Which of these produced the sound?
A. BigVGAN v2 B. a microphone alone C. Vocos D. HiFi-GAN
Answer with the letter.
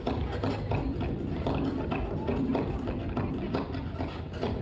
B